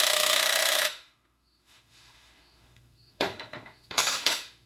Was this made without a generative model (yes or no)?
no